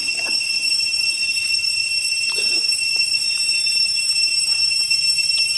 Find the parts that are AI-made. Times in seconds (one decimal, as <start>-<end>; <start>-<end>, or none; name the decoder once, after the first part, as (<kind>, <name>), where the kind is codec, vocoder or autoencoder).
3.4-5.6 (vocoder, BigVGAN v2)